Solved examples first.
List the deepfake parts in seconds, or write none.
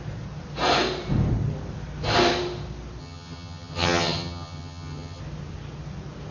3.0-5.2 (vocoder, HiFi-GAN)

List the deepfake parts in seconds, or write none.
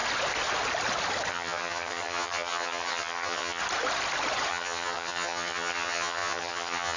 1.3-3.6 (vocoder, HiFi-GAN); 4.5-7.0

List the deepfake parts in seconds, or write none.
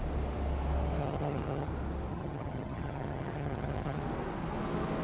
1.0-1.7 (vocoder, HiFi-GAN); 2.1-4.0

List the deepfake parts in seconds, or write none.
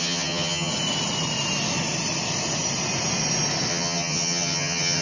0.0-0.7 (vocoder, HiFi-GAN); 3.7-5.0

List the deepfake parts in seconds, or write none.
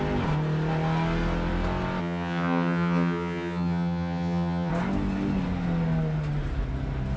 2.0-4.7 (vocoder, HiFi-GAN)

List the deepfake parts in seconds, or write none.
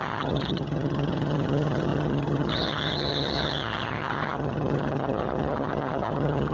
0.0-6.5 (vocoder, HiFi-GAN)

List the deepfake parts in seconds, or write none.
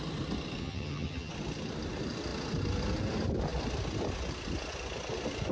0.6-1.3 (vocoder, HiFi-GAN)